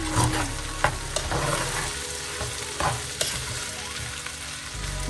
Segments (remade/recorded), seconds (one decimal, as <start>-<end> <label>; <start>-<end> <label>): 0.0-5.1 recorded